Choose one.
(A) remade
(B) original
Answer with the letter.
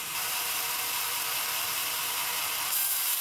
A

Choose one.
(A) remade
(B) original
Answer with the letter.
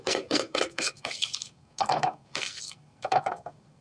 A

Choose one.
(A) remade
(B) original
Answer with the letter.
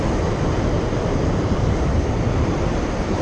B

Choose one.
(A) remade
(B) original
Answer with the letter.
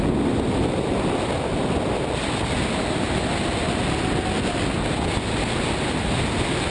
B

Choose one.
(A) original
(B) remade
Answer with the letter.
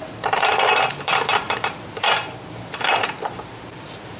B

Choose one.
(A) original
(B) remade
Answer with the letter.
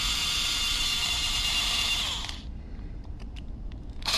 B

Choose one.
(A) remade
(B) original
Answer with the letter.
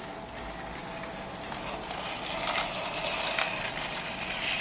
B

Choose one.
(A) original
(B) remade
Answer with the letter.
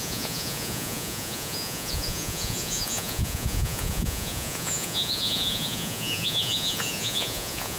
B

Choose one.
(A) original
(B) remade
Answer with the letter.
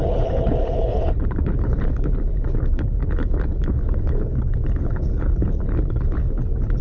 B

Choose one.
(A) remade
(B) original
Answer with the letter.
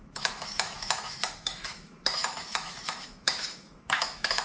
A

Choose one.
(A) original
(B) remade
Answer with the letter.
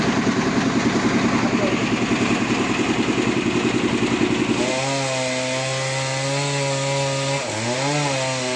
A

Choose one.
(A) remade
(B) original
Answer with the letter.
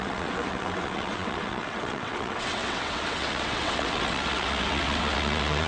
A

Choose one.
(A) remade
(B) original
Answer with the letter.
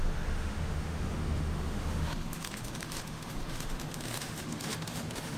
A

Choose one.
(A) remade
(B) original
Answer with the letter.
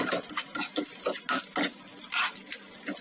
B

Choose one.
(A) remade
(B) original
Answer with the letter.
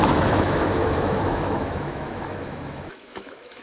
A